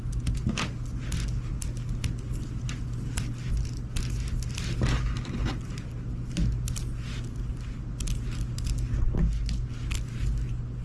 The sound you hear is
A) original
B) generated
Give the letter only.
A